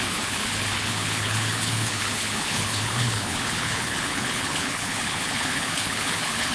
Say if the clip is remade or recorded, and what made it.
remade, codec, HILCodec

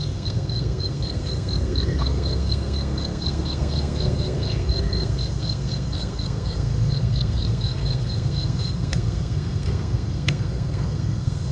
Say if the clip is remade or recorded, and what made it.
remade, codec, SNAC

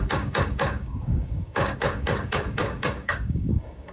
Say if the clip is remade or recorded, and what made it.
remade, codec, DAC